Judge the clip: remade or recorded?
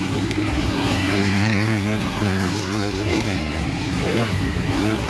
remade